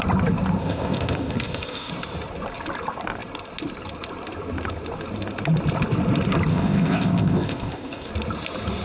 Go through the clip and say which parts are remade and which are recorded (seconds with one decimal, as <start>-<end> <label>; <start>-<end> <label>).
0.0-0.6 recorded; 0.6-1.9 remade; 1.9-6.5 recorded; 6.5-8.1 remade; 8.1-8.8 recorded